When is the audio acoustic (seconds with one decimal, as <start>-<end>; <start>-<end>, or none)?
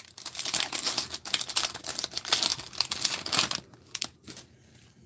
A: 0.0-5.1